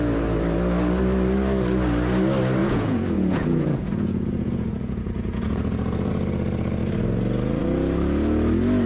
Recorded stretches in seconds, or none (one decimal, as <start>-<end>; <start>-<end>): 0.0-2.6; 6.1-8.9